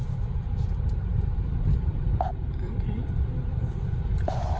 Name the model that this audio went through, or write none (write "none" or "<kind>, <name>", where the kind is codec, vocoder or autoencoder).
vocoder, BigVGAN v2